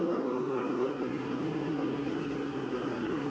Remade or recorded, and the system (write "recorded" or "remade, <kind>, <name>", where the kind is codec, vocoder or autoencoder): remade, codec, SNAC